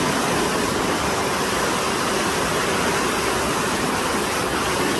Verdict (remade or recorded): recorded